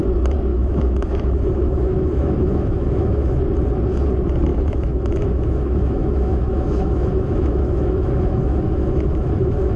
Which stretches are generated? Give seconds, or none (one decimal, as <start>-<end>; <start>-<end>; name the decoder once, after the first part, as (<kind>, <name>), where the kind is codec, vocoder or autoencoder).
0.5-3.4 (autoencoder, DAC-VAE); 4.5-9.8